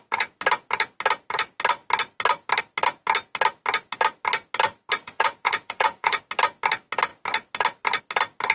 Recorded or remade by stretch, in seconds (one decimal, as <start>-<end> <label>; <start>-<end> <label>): 0.0-5.0 recorded; 5.0-6.2 remade; 6.2-8.5 recorded